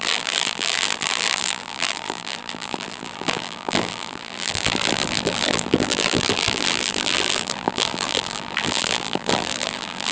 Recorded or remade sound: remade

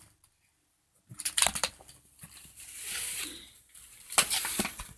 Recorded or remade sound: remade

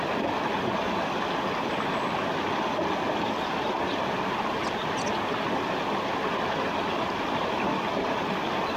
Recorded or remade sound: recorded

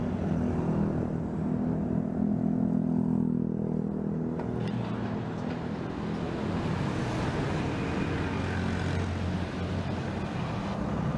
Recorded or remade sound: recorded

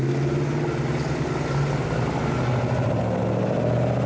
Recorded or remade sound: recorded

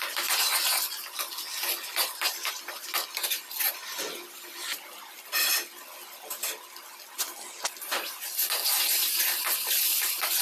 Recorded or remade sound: recorded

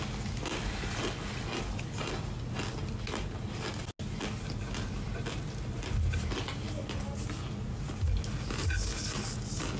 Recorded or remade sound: recorded